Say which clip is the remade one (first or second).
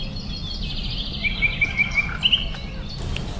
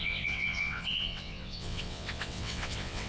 second